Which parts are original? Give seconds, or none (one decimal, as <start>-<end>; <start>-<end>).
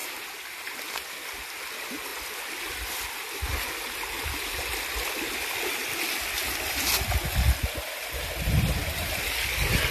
0.0-9.9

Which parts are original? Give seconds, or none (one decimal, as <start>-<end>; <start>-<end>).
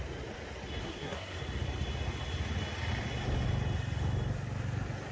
0.0-0.8; 1.4-5.1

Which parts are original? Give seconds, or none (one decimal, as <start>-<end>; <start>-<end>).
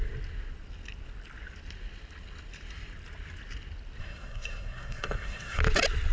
0.0-4.0; 5.6-6.1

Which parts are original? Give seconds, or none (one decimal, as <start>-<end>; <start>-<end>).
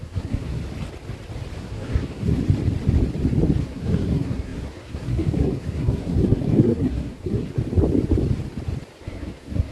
0.6-1.6; 2.4-3.6; 7.6-9.0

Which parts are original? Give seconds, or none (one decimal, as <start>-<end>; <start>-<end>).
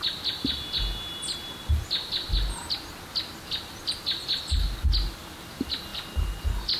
0.0-6.8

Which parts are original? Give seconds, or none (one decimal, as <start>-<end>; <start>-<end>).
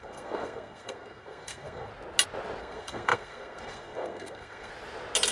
1.9-2.6; 4.7-5.3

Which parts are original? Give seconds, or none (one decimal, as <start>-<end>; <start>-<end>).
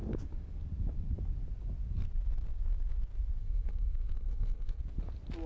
0.0-3.4; 4.8-5.5